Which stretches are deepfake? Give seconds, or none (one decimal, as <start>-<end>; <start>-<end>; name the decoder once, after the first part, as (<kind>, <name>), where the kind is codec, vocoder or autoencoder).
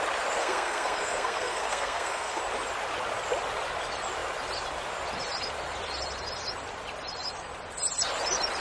0.4-2.4 (codec, SNAC)